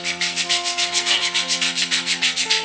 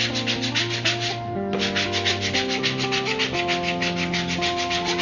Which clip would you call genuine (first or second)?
second